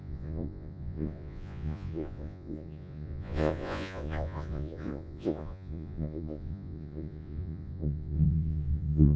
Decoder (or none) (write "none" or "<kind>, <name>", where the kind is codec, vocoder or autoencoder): vocoder, Vocos